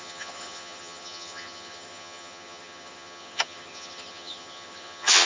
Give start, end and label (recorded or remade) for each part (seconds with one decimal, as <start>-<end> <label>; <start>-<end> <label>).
0.0-5.3 remade